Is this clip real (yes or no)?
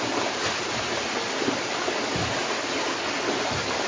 yes